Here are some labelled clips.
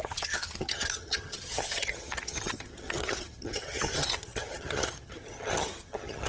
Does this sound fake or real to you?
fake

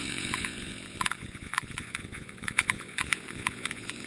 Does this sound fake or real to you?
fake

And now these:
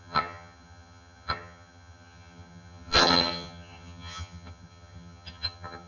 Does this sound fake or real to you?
fake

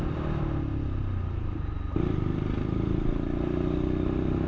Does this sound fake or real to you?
real